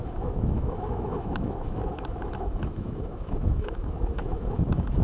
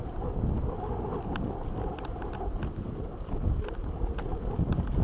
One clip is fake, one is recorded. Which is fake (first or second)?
first